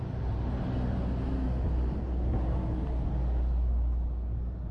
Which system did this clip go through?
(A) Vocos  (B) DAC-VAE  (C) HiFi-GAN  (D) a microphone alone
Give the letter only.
D